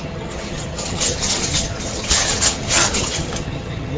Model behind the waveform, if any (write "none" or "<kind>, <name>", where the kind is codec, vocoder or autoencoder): vocoder, HiFi-GAN